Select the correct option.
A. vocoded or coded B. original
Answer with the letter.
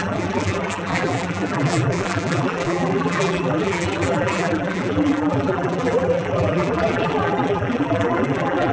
A